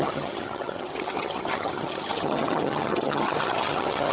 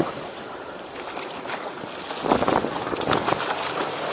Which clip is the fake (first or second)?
first